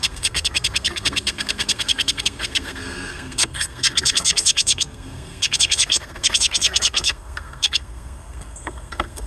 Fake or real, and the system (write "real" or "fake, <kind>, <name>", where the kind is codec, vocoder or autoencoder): fake, codec, SNAC